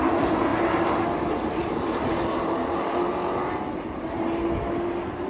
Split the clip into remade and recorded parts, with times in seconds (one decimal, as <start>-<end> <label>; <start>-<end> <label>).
0.0-5.3 recorded